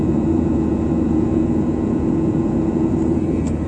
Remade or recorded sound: remade